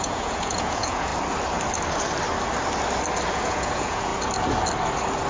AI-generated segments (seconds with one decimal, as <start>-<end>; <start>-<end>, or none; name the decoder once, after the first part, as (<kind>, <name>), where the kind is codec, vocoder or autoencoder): 0.0-1.1 (vocoder, Vocos); 3.3-4.1